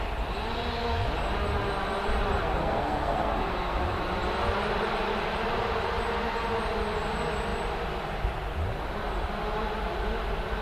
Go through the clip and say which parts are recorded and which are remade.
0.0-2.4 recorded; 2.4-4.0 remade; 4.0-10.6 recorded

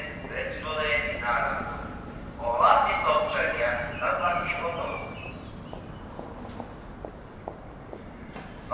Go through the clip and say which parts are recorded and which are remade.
0.0-1.1 recorded; 1.1-5.5 remade; 5.5-8.7 recorded

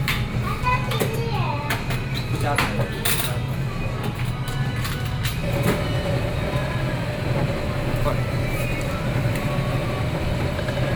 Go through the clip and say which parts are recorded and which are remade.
0.0-11.0 recorded

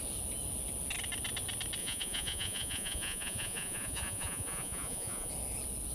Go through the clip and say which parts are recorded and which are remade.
0.0-1.8 recorded; 1.8-5.3 remade; 5.3-5.9 recorded

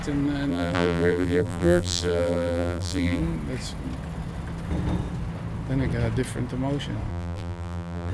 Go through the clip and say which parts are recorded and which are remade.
0.0-0.5 recorded; 0.5-3.2 remade; 3.2-7.1 recorded; 7.1-8.1 remade

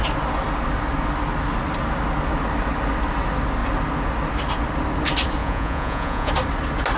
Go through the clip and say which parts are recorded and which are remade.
0.0-5.4 recorded; 5.4-6.3 remade; 6.3-7.0 recorded

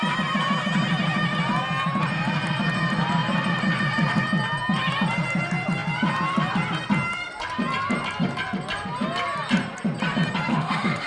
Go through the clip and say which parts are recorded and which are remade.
0.0-10.5 recorded; 10.5-11.1 remade

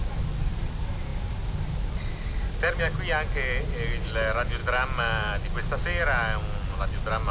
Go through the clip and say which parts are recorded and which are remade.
0.0-7.3 recorded